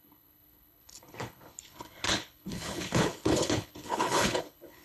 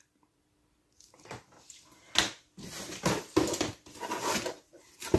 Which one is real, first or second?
second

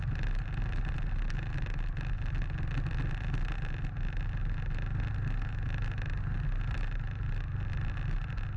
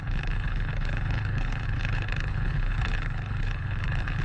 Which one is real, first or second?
first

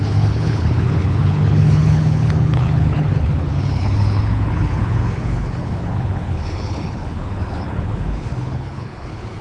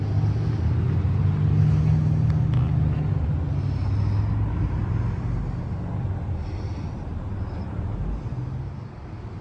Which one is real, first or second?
second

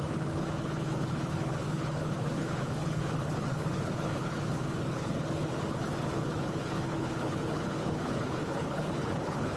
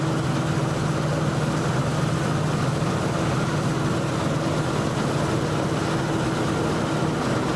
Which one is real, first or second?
second